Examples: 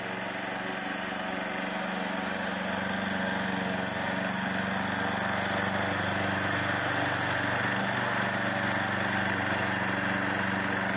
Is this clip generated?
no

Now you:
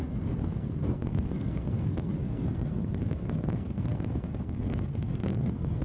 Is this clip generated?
yes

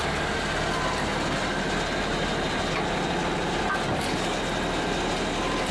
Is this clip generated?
no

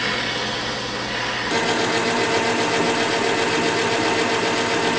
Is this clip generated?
no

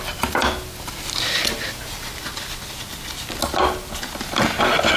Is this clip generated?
no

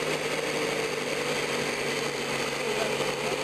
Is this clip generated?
no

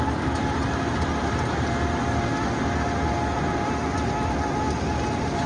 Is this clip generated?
no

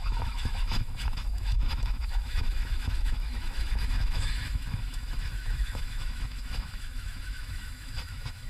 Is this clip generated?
yes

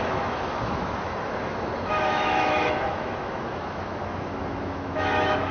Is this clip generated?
yes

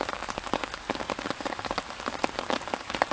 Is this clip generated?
yes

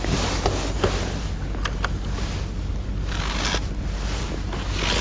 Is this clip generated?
no